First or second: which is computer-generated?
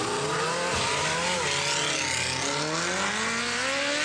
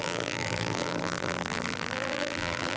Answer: second